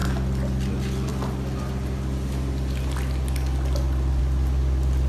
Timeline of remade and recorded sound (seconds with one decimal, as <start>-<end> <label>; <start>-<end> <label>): 0.0-5.1 recorded